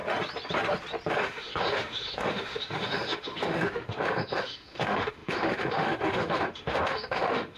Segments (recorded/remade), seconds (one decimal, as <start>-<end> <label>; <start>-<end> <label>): 0.0-1.1 recorded; 1.1-7.6 remade